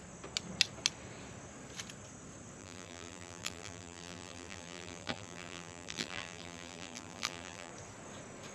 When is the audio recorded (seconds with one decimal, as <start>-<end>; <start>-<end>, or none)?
0.0-2.6; 7.7-8.5